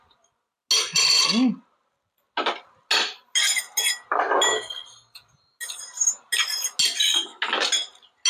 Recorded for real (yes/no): yes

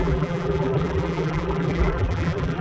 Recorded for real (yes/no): no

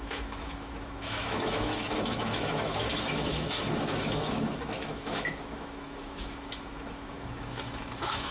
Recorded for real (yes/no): no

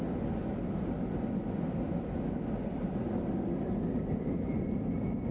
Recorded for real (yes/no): yes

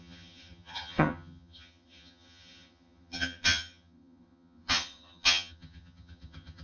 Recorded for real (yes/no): no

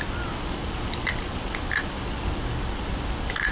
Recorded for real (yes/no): yes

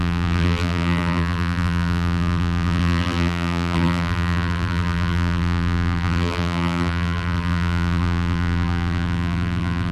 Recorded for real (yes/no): no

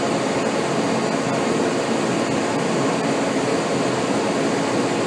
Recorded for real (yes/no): yes